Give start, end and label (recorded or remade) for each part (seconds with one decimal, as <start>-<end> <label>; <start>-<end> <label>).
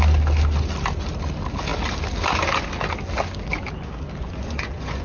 0.0-4.2 recorded; 4.2-5.0 remade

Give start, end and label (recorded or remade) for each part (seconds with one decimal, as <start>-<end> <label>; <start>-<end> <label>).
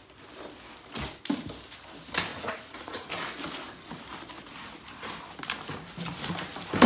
0.0-2.3 recorded; 2.3-3.1 remade; 3.1-6.9 recorded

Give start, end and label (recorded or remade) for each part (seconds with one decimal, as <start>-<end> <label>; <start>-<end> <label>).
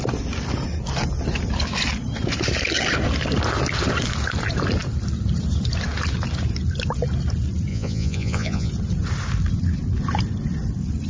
0.0-7.7 recorded; 7.7-8.7 remade; 8.7-11.1 recorded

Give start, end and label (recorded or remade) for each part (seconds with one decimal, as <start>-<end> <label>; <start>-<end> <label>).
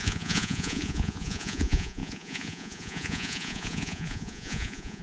0.0-5.0 remade